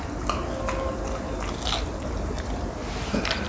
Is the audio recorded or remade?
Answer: recorded